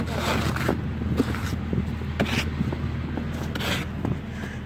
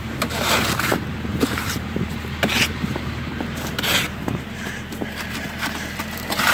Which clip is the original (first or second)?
first